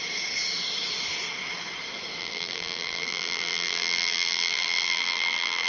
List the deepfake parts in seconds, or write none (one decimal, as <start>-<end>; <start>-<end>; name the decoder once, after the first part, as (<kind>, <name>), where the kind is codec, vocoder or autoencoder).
2.2-5.7 (vocoder, BigVGAN v2)

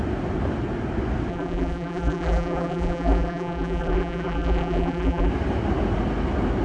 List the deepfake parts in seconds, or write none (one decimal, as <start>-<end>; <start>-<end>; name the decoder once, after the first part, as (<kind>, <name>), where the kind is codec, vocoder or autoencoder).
1.3-5.3 (vocoder, BigVGAN v2)

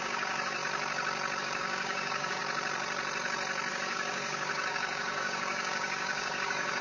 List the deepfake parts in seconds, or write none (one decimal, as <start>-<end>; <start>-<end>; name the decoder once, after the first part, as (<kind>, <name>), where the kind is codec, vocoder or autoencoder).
0.0-0.6 (codec, DAC); 1.4-2.4; 3.7-6.8

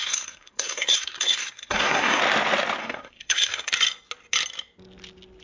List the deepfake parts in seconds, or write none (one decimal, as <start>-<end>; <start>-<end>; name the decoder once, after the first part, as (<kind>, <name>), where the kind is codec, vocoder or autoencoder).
0.0-2.2 (codec, SNAC); 2.8-3.7

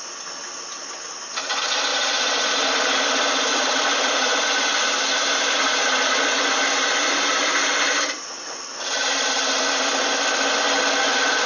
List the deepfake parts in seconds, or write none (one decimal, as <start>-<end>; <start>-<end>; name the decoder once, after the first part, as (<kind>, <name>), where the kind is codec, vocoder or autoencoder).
3.5-4.4 (vocoder, Vocos)